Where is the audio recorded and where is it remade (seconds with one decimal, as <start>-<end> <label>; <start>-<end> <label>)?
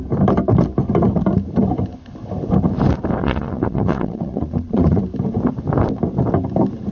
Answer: 0.0-3.2 recorded; 3.2-5.0 remade; 5.0-6.9 recorded